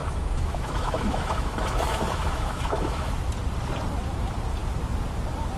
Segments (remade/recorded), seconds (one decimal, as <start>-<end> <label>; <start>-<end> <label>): 0.0-3.1 remade; 3.1-5.6 recorded